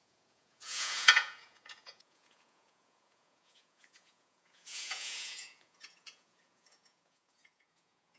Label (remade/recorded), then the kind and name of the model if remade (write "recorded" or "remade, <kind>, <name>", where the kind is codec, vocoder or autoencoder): remade, vocoder, Vocos